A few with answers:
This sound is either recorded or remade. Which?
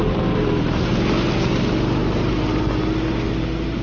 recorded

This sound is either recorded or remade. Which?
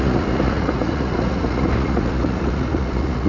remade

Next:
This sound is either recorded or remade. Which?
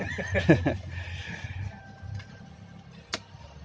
recorded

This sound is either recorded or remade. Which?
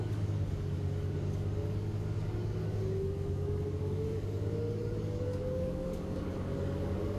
remade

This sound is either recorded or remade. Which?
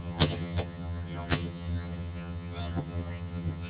remade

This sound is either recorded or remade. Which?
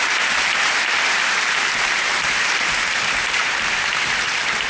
remade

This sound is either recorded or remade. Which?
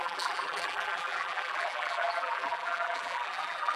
remade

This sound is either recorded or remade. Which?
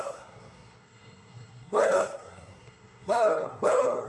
remade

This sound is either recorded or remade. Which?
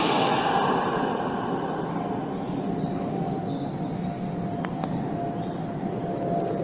recorded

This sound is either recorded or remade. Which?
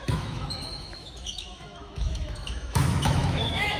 remade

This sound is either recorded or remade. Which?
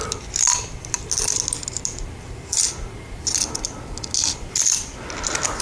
recorded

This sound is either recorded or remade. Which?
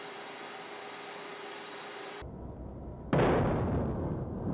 recorded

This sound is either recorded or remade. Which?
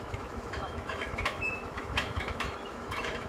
remade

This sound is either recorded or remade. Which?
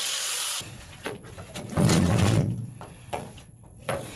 remade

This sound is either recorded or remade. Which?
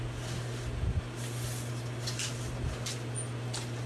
recorded